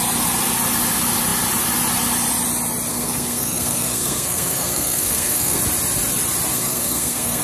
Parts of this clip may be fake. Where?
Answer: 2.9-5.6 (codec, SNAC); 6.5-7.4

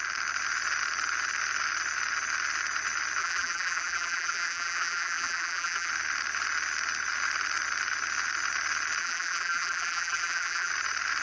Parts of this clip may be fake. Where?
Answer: 3.2-5.9 (vocoder, BigVGAN v2); 9.0-10.7